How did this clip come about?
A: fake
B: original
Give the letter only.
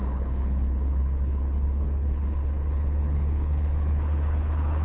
A